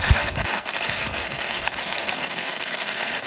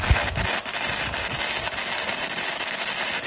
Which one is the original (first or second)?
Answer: second